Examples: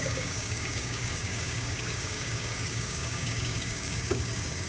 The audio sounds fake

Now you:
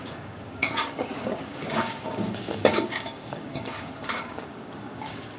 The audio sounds fake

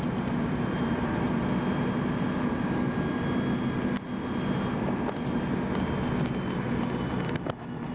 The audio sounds real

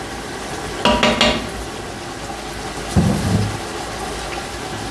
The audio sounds real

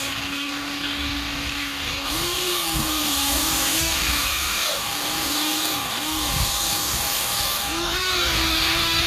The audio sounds fake